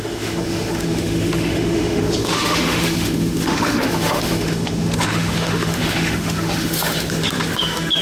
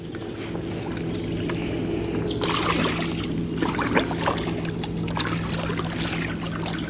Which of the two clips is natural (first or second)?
second